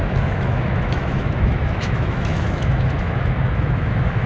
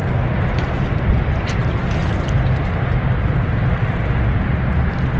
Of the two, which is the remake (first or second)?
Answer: first